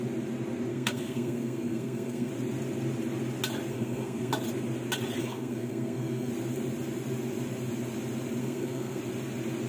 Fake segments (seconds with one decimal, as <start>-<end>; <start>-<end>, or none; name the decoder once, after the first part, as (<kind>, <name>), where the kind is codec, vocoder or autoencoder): 0.7-2.3 (codec, SNAC); 3.7-4.3; 5.2-6.3; 8.4-9.0